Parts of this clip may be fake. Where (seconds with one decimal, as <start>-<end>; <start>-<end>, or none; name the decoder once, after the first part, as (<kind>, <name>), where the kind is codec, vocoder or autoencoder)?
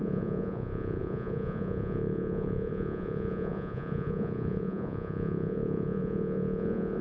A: 0.0-7.0 (vocoder, Vocos)